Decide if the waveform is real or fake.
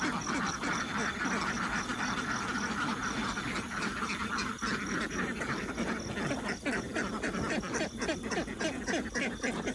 real